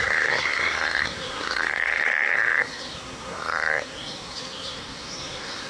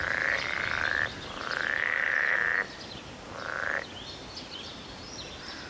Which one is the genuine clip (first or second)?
second